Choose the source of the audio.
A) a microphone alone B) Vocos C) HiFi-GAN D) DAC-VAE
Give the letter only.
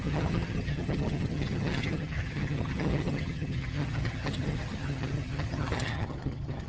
C